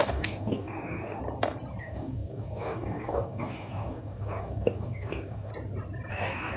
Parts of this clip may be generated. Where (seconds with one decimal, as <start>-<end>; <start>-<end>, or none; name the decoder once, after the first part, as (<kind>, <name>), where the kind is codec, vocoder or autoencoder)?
0.0-1.2 (codec, DAC); 1.8-5.5; 6.1-6.6